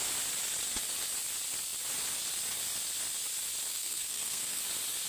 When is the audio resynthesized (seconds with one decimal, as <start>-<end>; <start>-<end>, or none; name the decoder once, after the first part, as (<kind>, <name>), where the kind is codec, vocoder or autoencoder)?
3.7-4.6 (codec, SNAC)